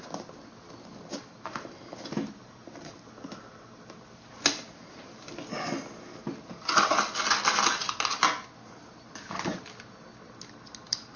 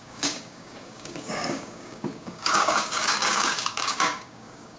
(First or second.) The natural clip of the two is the first